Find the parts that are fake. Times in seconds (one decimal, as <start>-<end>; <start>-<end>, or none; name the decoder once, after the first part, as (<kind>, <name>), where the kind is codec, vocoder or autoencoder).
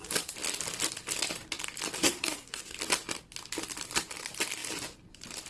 2.0-2.6 (codec, SNAC)